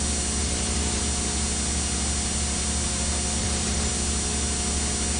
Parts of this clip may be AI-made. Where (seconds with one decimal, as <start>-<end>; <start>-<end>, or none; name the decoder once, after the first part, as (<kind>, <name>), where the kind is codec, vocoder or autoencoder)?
0.4-1.0 (vocoder, BigVGAN v2); 3.4-3.9